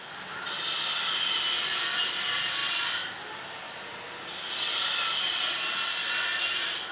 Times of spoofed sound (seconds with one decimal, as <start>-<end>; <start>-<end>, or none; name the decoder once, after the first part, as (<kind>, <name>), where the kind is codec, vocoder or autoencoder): none